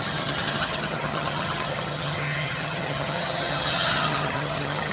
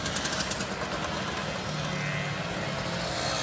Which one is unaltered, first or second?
second